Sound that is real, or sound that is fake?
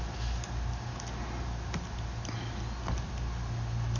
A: real